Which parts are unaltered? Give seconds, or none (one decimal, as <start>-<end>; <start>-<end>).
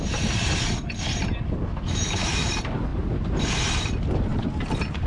0.0-1.7; 2.5-5.1